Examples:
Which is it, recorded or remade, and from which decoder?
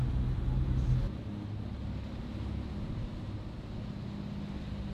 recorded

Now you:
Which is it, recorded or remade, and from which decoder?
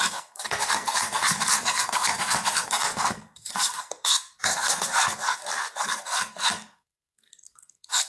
remade, codec, SNAC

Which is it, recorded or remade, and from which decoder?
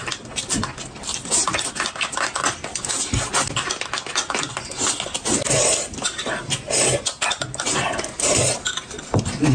recorded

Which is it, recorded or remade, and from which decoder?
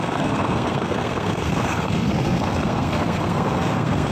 remade, codec, SNAC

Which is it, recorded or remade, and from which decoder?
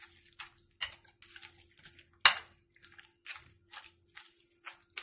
recorded